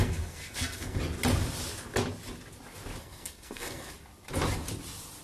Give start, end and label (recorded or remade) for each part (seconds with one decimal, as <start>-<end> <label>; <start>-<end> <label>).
0.0-1.0 remade; 1.0-3.0 recorded; 3.0-3.9 remade; 3.9-5.2 recorded